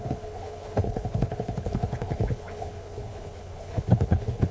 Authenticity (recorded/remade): remade